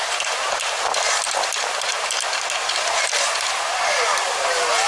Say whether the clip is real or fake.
real